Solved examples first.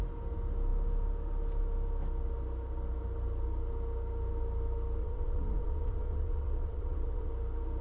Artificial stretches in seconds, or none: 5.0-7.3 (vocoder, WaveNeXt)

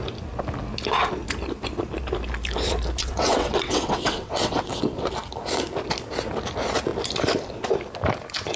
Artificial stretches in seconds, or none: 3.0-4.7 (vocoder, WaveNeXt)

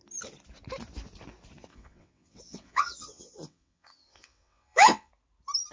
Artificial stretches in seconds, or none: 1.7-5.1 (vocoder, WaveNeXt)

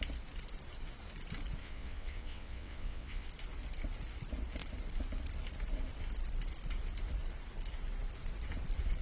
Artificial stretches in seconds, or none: 1.6-3.3 (vocoder, WaveNeXt)